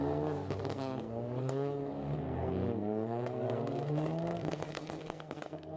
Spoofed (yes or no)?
yes